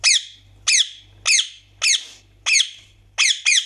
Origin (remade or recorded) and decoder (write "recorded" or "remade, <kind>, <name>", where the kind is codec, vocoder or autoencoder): recorded